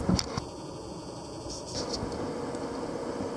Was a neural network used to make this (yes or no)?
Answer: no